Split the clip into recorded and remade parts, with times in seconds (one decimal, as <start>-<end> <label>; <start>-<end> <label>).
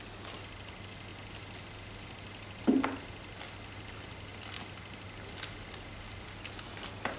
0.0-7.2 recorded